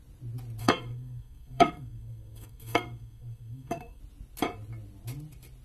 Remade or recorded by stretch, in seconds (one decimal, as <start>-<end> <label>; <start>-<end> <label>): 0.0-0.6 recorded; 0.6-4.0 remade; 4.0-5.6 recorded